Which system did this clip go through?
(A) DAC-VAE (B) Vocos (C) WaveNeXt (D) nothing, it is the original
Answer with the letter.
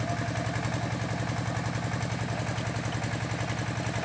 D